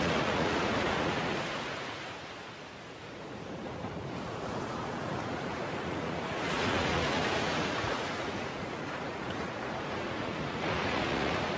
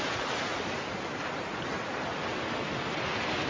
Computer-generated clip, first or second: first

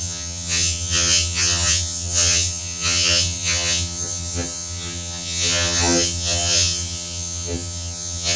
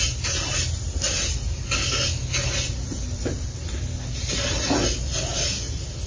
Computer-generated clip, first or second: first